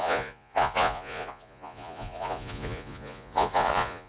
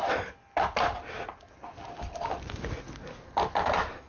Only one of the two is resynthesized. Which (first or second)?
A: first